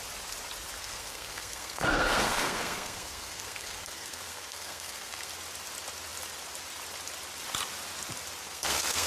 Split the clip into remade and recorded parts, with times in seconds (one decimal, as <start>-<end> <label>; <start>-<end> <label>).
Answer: 0.0-0.8 recorded; 0.8-5.3 remade; 5.3-8.4 recorded; 8.4-9.1 remade